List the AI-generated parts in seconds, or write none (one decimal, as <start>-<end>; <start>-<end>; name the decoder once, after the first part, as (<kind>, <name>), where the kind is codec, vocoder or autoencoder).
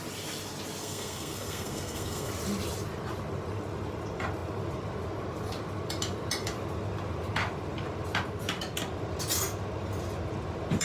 0.8-2.3 (codec, SNAC)